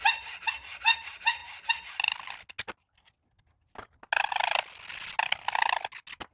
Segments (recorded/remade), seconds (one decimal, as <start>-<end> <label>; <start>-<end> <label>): 0.0-6.3 recorded